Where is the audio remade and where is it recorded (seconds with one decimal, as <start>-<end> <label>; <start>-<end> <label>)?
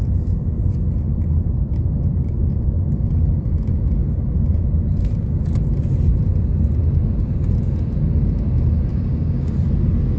0.0-8.9 recorded; 8.9-9.5 remade; 9.5-10.2 recorded